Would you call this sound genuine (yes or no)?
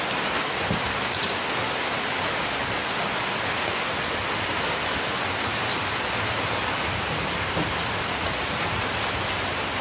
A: yes